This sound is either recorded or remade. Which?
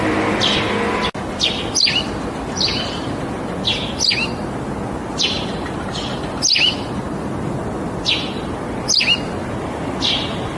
recorded